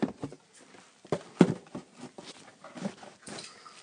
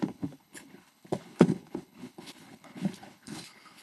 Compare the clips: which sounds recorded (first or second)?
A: first